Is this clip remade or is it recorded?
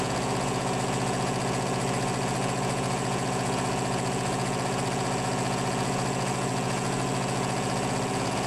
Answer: remade